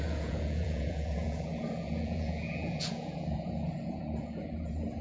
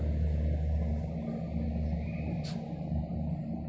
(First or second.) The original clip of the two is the second